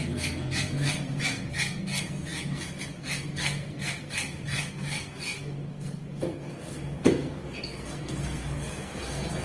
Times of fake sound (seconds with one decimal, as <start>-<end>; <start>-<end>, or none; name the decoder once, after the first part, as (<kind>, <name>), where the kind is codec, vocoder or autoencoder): 0.0-9.4 (codec, SNAC)